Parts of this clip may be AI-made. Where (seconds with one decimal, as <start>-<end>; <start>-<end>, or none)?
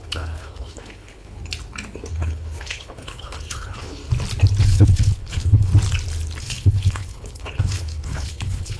0.0-1.4; 2.1-4.0; 4.6-5.7; 6.4-8.8